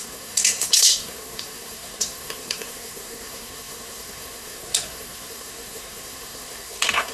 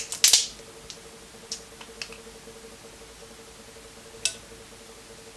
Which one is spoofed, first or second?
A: first